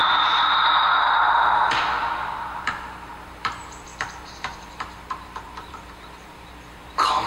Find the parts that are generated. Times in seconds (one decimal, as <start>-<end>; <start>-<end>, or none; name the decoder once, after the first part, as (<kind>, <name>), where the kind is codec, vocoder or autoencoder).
0.0-7.3 (vocoder, BigVGAN v2)